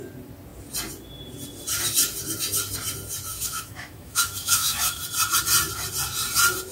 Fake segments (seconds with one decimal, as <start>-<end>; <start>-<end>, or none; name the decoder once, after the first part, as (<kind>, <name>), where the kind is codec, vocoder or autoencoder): 3.3-5.0 (autoencoder, DAC-VAE)